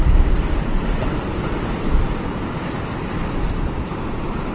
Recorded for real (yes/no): yes